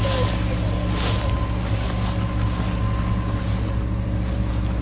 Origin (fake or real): real